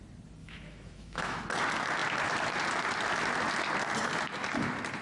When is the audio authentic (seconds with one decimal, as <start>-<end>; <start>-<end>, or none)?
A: 0.0-0.4; 1.4-5.0